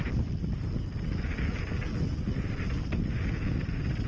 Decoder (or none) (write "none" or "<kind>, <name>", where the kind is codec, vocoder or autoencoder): none